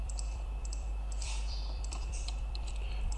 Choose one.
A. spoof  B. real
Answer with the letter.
A